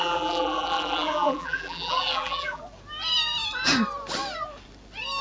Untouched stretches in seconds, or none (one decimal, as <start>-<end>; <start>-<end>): 2.6-5.2